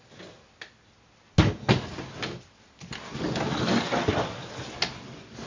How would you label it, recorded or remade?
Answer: recorded